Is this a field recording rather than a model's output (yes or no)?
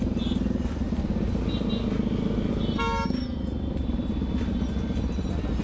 yes